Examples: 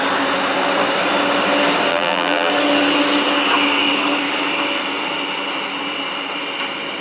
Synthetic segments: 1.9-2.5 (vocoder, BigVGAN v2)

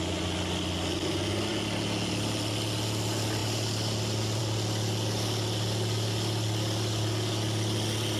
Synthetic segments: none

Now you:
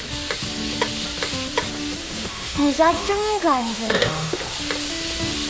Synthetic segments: 2.0-4.4 (autoencoder, DAC-VAE)

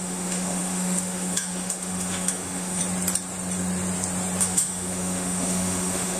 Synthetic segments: 0.0-2.8 (autoencoder, DAC-VAE); 4.4-6.2

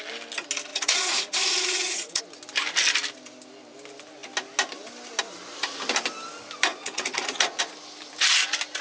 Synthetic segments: 0.7-2.2 (vocoder, Vocos); 6.7-7.6